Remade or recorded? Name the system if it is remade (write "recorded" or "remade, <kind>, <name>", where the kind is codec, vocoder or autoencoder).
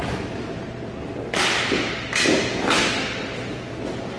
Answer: recorded